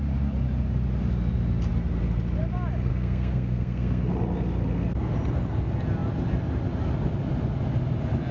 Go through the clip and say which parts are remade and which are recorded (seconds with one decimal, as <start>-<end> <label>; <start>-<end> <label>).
0.0-2.9 recorded; 2.9-4.1 remade; 4.1-8.3 recorded